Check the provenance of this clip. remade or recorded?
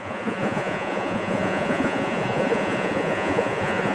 remade